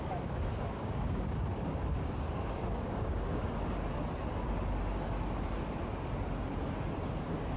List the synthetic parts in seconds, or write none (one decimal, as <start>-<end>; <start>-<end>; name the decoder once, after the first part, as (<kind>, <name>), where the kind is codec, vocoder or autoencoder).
0.0-3.5 (codec, DAC); 7.1-7.6